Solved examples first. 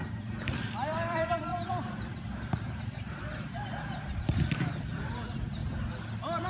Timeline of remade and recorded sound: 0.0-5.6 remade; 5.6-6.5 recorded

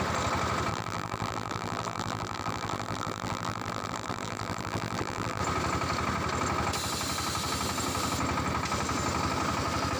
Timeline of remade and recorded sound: 0.0-0.7 recorded; 0.7-5.4 remade; 5.4-10.0 recorded